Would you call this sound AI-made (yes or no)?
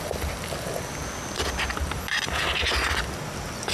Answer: no